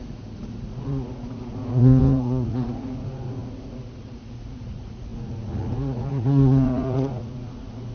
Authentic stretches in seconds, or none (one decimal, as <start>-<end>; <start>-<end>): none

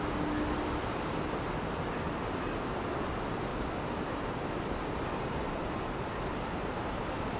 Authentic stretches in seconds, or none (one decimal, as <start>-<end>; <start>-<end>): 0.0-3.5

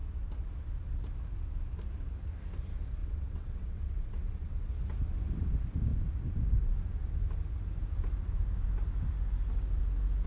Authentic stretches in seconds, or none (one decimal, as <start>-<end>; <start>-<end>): 0.0-3.0; 4.7-10.3

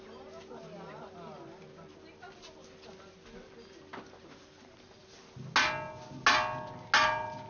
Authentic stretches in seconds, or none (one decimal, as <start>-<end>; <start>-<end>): 0.0-7.5

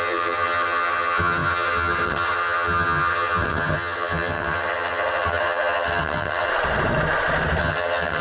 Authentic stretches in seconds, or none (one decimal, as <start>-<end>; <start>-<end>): 6.5-7.6

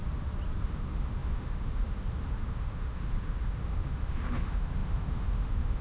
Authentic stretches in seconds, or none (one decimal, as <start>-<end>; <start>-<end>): 0.0-0.6